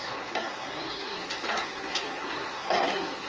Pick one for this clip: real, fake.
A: fake